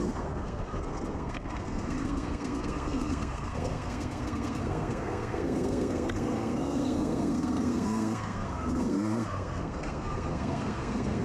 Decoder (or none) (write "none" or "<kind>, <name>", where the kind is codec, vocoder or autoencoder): codec, SNAC